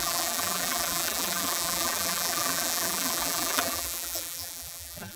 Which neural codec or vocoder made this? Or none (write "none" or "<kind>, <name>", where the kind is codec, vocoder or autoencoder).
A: vocoder, BigVGAN v2